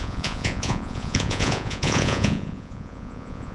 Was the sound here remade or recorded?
remade